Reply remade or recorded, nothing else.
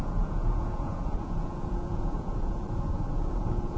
remade